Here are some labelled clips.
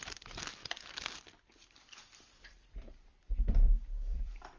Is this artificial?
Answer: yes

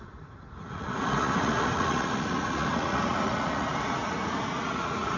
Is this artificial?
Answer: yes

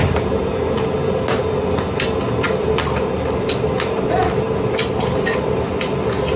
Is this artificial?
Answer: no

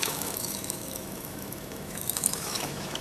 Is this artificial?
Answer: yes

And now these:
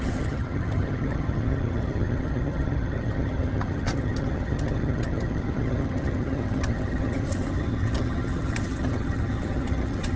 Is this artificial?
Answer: yes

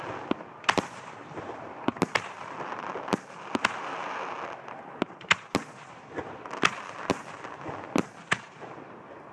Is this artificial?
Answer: no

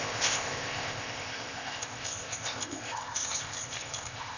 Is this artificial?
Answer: yes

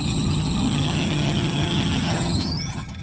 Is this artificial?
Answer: yes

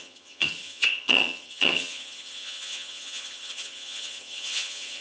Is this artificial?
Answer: yes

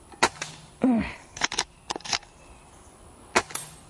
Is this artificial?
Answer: yes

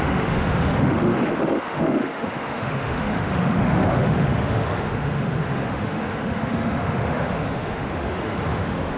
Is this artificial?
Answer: yes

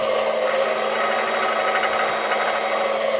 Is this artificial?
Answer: no